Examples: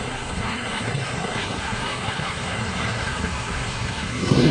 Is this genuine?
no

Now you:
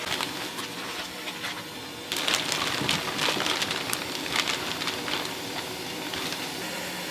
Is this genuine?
yes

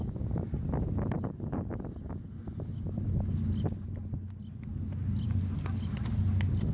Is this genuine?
yes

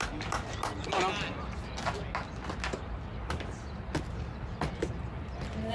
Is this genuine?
yes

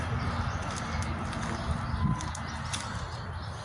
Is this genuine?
yes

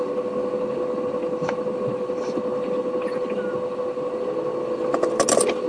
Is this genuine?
yes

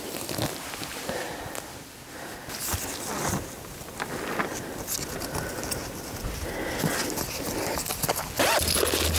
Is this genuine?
yes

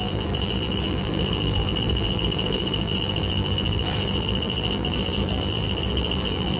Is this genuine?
no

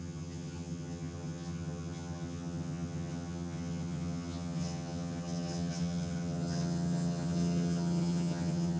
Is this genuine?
no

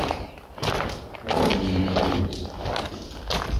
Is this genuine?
yes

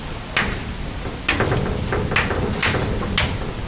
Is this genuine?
yes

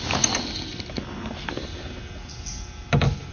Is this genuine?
yes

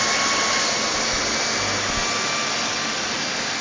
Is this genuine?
yes